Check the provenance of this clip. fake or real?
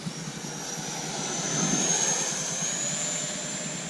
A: real